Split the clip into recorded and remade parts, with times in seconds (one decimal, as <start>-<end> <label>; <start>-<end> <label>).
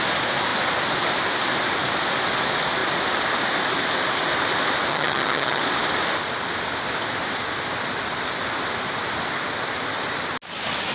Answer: 0.0-4.9 recorded; 4.9-5.6 remade; 5.6-10.9 recorded